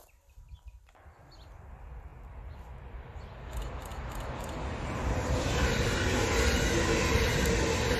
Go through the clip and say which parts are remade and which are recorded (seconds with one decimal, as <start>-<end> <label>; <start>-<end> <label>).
0.0-8.0 recorded